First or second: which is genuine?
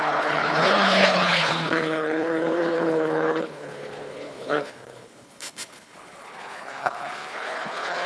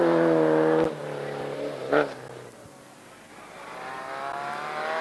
second